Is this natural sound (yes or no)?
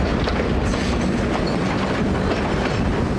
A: yes